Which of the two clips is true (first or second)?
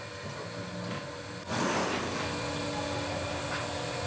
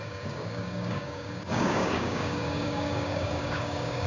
first